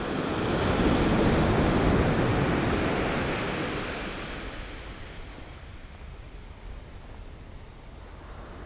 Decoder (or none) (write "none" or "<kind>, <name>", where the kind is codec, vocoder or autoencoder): none